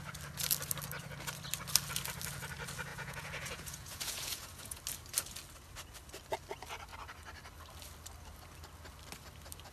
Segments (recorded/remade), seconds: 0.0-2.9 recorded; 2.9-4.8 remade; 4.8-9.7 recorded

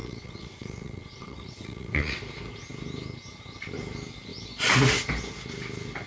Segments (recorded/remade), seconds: 0.0-2.2 remade; 2.2-6.1 recorded

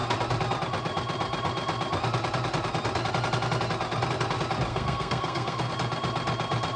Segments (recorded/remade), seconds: 0.0-4.7 recorded; 4.7-5.7 remade; 5.7-6.8 recorded

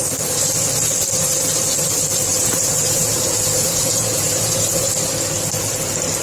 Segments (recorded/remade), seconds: 0.0-2.3 recorded; 2.3-4.9 remade; 4.9-6.2 recorded

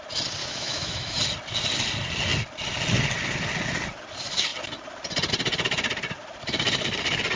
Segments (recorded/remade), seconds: 0.0-0.4 recorded; 0.4-1.2 remade; 1.2-7.4 recorded

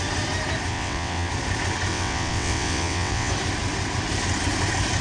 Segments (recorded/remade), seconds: 0.0-0.7 recorded; 0.7-1.3 remade; 1.3-1.9 recorded; 1.9-3.3 remade; 3.3-5.0 recorded

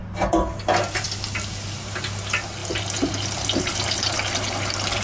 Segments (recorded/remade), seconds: 0.0-5.0 recorded